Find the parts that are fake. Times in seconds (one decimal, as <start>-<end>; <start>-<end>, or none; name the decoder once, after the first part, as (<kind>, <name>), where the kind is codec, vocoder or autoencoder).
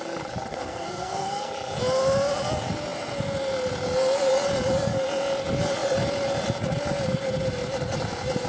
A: 0.5-1.5 (codec, SNAC)